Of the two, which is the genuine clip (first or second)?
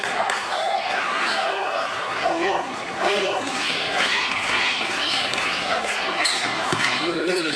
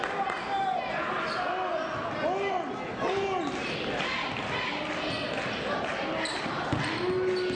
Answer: second